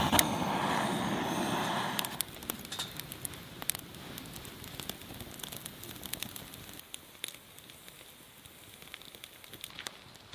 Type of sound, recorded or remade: recorded